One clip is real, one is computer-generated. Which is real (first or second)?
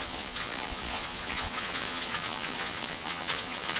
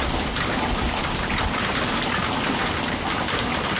second